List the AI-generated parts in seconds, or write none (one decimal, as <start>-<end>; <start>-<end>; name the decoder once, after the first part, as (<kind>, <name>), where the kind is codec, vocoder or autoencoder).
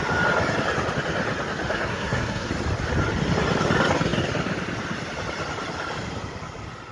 1.7-2.5 (codec, SNAC)